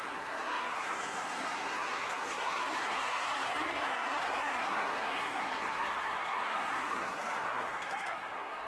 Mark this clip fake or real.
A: fake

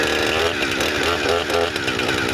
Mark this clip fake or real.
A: real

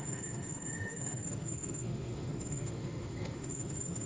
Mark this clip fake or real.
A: fake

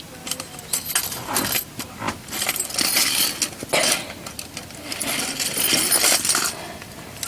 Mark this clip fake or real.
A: real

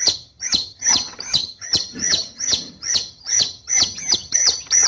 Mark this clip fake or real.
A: fake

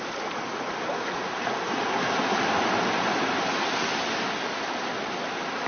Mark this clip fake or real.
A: real